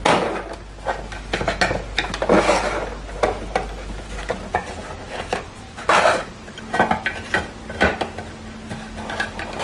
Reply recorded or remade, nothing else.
recorded